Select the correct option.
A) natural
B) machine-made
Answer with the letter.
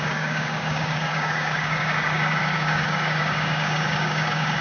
B